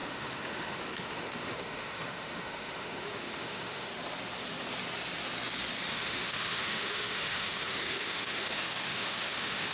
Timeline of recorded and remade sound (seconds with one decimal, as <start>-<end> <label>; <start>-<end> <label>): 0.0-3.9 remade; 3.9-5.9 recorded; 5.9-9.7 remade